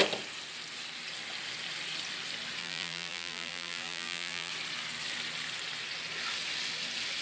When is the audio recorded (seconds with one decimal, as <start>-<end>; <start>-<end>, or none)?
0.0-2.6; 4.5-7.2